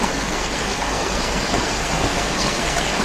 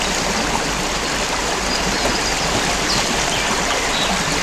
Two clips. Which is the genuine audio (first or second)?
second